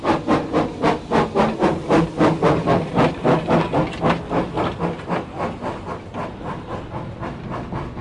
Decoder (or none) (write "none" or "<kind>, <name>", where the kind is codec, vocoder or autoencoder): none